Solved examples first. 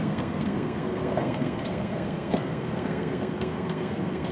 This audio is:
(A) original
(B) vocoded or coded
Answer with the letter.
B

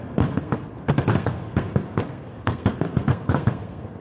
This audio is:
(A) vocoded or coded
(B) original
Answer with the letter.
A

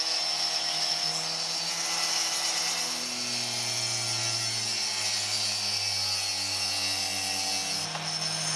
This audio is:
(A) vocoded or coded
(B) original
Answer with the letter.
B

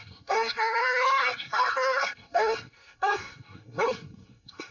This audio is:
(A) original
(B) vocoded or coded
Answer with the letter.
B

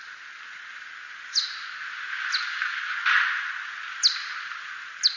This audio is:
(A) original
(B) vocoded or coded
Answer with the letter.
A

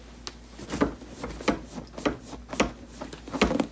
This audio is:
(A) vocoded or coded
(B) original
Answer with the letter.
B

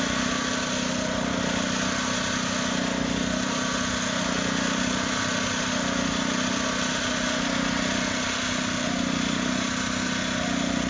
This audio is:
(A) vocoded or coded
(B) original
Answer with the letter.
B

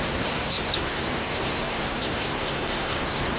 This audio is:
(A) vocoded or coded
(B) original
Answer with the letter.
A